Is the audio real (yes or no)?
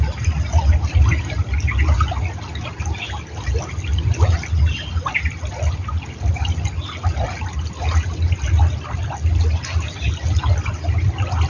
yes